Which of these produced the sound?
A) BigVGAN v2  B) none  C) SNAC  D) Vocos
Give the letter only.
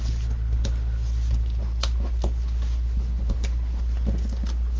B